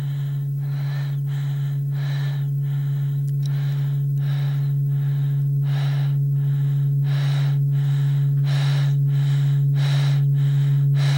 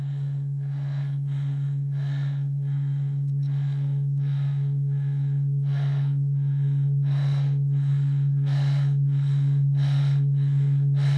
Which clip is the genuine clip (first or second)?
first